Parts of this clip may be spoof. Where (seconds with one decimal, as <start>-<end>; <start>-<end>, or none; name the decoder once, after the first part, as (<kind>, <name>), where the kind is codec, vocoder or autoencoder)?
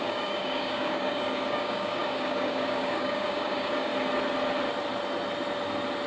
0.0-3.9 (codec, DAC)